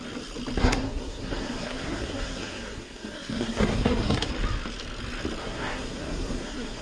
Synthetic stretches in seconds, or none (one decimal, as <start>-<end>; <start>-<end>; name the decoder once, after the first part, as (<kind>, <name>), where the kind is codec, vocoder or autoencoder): 0.6-4.3 (codec, SNAC); 5.4-6.8